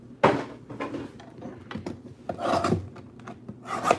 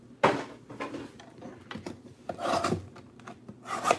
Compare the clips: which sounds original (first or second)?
first